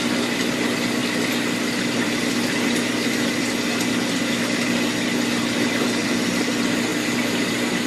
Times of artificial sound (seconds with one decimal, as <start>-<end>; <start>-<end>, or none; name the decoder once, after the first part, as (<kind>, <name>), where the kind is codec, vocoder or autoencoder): none